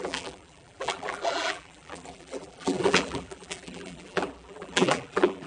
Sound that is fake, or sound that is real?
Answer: fake